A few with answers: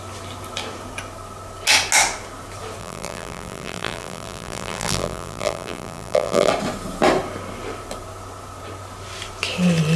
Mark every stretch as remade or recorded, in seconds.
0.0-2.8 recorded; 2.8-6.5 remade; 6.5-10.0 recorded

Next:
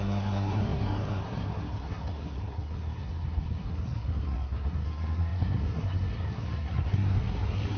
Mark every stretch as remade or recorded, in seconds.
0.0-7.8 remade

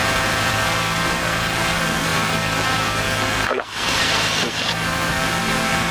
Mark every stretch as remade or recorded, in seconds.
0.0-0.5 recorded; 0.5-5.9 remade